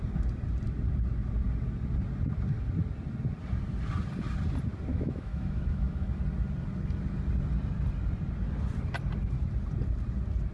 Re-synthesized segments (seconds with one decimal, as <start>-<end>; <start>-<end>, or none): 4.9-6.2